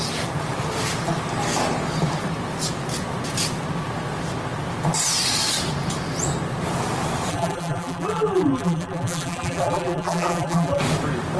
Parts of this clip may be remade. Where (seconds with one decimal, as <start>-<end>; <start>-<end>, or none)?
7.3-10.8